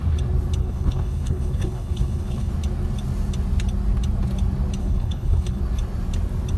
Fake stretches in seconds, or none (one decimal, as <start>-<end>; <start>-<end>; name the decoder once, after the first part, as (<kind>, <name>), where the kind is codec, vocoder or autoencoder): 0.6-2.5 (codec, HILCodec); 4.8-5.6